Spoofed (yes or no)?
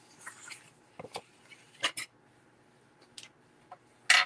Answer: no